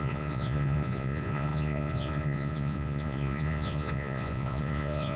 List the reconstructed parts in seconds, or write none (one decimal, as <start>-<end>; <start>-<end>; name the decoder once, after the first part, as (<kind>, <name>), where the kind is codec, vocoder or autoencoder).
0.0-5.2 (vocoder, Vocos)